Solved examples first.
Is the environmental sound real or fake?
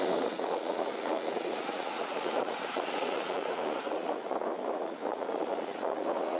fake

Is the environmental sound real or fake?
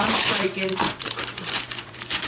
fake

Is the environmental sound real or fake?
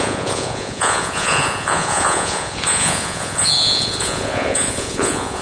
fake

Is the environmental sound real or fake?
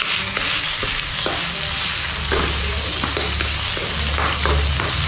real